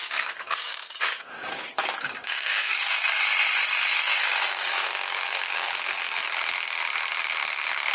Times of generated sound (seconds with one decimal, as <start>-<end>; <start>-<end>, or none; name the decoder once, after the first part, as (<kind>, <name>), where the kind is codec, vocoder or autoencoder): 0.0-3.2 (codec, DAC); 4.0-5.7